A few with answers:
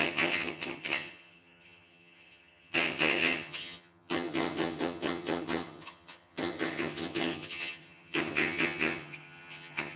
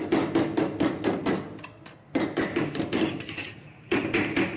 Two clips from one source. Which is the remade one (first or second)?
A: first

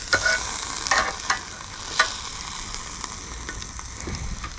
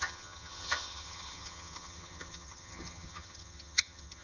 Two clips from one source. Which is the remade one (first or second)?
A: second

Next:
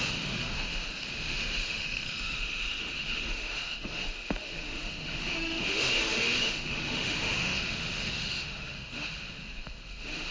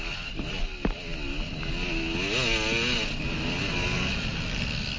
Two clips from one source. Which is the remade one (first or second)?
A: first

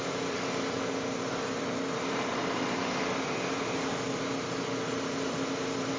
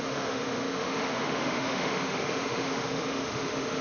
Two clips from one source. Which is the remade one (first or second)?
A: second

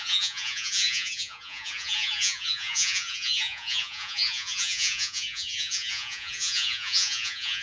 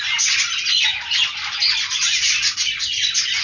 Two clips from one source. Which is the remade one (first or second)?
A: first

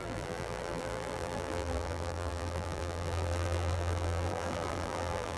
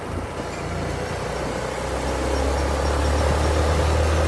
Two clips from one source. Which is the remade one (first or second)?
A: first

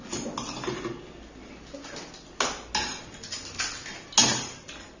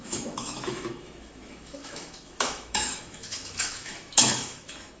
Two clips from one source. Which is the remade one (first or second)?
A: second